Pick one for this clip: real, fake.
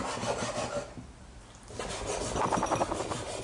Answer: real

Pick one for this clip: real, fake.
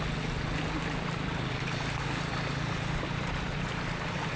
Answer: real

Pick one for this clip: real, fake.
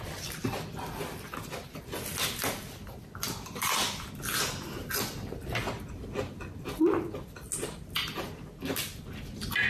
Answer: real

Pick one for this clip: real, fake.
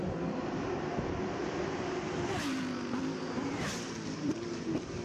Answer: real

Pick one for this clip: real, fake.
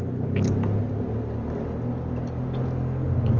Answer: real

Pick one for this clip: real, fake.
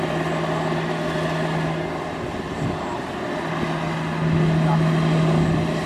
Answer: real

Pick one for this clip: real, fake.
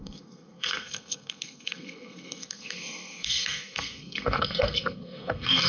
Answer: fake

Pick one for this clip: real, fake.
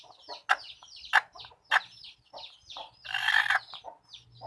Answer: real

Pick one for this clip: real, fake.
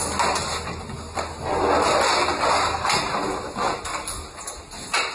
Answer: real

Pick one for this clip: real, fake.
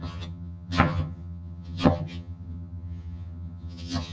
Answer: fake